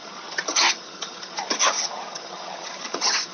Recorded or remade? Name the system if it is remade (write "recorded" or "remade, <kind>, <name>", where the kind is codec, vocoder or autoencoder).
remade, vocoder, HiFi-GAN